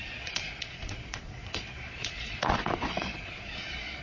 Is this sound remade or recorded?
remade